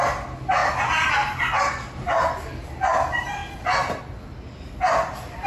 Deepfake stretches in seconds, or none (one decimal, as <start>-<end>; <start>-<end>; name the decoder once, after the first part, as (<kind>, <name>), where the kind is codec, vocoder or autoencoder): none